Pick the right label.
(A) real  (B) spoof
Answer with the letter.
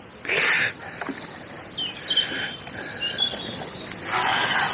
A